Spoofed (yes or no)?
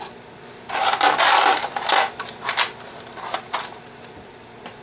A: no